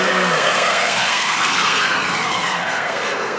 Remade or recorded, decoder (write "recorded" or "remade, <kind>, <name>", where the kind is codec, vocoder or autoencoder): remade, codec, SNAC